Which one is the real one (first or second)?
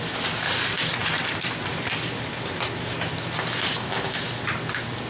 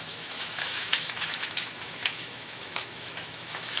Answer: first